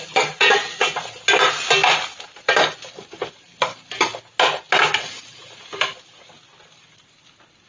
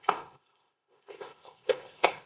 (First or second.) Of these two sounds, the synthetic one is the second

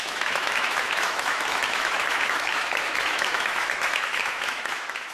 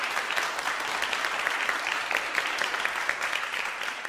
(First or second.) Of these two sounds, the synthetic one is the first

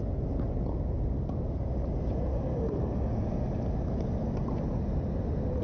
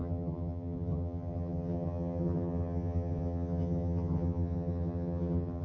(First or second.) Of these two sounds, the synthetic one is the second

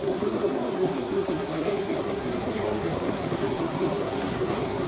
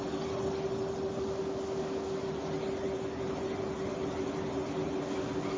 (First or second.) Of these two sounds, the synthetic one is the first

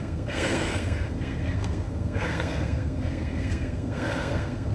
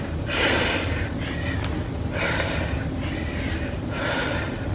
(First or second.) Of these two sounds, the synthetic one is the first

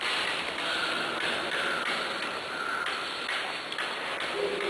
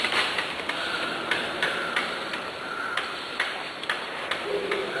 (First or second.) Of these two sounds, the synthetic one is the second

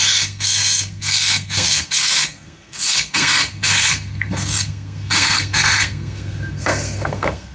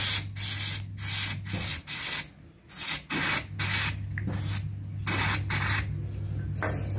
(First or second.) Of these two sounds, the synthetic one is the first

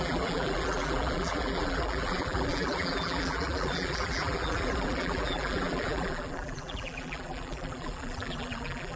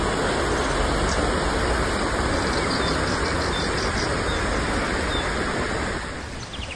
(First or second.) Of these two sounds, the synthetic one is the first